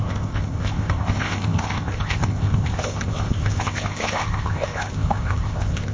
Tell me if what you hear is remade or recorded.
remade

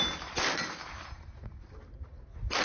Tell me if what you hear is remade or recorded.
recorded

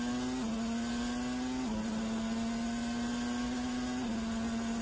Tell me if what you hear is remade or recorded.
recorded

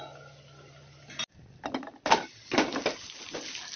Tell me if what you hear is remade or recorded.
recorded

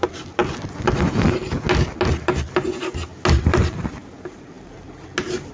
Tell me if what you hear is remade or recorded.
recorded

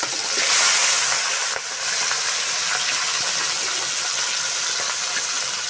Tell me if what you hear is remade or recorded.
recorded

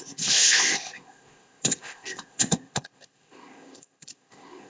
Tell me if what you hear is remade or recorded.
remade